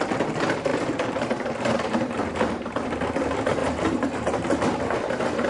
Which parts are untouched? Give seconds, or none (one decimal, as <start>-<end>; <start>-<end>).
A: 0.0-0.7; 2.8-3.6; 4.6-5.5

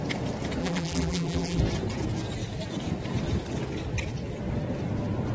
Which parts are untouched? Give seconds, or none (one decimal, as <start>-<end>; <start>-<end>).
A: 0.0-0.6; 1.6-5.3

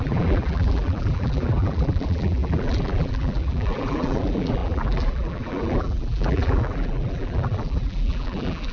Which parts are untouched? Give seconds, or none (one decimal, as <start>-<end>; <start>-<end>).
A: none